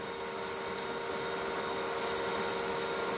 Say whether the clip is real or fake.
real